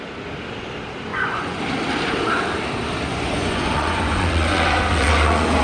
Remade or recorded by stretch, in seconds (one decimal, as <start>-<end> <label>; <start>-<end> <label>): 0.0-1.1 recorded; 1.1-1.6 remade; 1.6-3.1 recorded; 3.1-5.6 remade